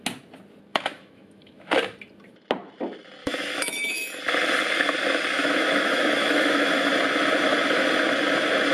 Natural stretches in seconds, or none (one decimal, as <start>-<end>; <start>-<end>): 0.0-0.7; 1.7-3.2; 4.2-5.4; 6.9-8.7